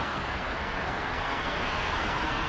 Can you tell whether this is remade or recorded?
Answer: remade